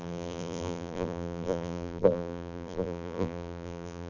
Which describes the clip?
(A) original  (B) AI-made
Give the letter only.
B